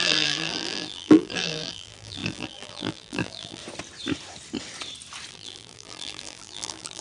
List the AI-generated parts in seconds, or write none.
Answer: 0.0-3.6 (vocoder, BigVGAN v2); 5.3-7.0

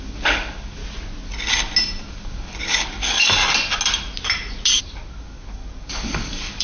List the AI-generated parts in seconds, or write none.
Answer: 0.0-0.8 (codec, DAC); 2.1-3.4; 4.8-6.6

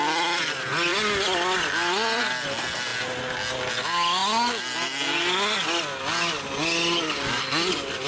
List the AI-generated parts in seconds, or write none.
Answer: none